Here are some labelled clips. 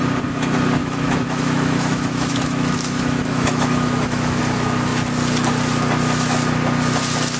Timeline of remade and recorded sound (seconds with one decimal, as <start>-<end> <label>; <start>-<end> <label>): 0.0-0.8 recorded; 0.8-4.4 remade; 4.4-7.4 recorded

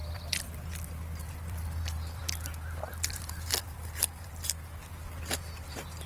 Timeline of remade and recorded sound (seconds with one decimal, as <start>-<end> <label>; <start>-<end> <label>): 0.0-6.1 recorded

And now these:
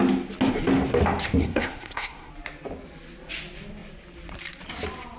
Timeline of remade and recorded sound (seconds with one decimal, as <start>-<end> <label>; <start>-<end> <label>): 0.0-1.4 recorded; 1.4-2.3 remade; 2.3-5.2 recorded

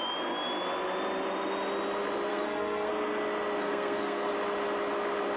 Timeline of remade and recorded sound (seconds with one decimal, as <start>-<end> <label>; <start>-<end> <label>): 0.0-2.3 recorded; 2.3-2.9 remade; 2.9-3.6 recorded; 3.6-4.3 remade; 4.3-5.4 recorded